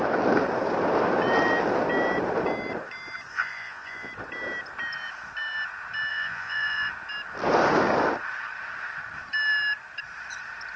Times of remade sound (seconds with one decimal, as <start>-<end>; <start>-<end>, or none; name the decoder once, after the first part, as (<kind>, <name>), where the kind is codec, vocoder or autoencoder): 3.3-4.1 (vocoder, Vocos); 6.1-6.9